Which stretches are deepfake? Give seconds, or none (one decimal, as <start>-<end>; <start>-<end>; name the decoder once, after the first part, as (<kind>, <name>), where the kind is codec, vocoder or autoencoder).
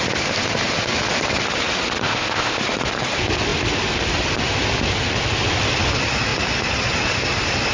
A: 2.0-2.6 (codec, ZipCodec)